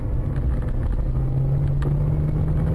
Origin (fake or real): real